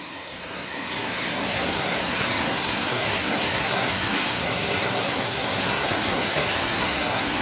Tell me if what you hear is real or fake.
fake